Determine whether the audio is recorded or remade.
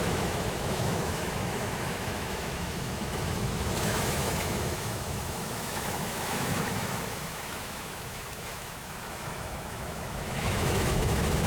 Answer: remade